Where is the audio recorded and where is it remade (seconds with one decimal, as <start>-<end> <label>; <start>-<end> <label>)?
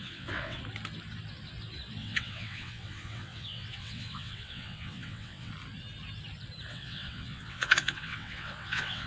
0.0-0.6 remade; 0.6-2.0 recorded; 2.0-5.5 remade; 5.5-6.7 recorded; 6.7-9.1 remade